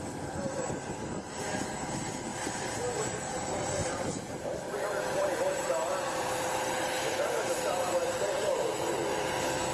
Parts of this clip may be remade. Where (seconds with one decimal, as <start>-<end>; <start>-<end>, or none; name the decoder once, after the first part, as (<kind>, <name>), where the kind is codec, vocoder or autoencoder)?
2.3-3.0 (vocoder, BigVGAN v2); 3.8-9.0

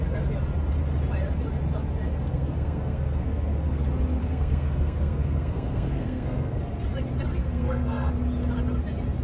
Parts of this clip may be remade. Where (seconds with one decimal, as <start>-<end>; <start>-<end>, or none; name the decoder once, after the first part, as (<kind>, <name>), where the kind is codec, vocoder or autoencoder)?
2.3-3.8 (codec, SNAC); 4.2-6.6; 7.4-8.1

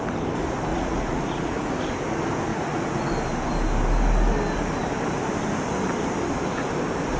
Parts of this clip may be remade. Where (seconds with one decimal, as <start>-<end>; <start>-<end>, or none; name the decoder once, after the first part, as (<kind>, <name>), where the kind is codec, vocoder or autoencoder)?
0.7-1.8 (vocoder, Vocos); 2.5-3.1

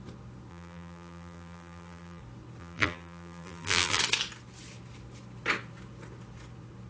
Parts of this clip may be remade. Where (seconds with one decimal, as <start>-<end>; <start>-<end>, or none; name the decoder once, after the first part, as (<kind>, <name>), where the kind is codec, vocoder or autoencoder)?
0.5-2.2 (vocoder, BigVGAN v2); 2.6-4.0